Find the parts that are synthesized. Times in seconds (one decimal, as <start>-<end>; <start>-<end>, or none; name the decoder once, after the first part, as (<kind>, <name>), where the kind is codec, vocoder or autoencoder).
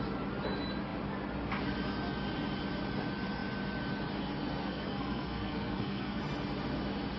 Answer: 4.6-6.2 (codec, SNAC)